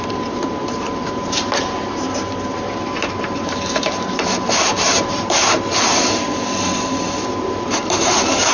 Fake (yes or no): yes